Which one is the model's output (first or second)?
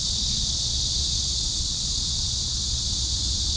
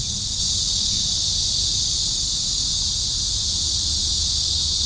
first